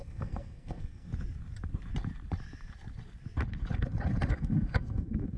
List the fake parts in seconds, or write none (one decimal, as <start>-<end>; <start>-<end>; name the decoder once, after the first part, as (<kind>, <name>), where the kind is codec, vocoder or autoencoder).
0.0-1.1 (codec, SNAC); 4.3-5.4